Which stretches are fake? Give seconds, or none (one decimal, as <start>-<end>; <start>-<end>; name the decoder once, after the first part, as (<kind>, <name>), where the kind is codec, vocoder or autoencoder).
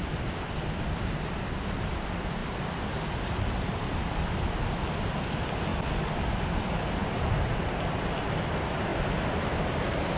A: none